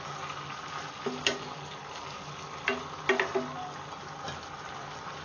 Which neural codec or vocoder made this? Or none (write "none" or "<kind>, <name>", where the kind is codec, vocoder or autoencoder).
none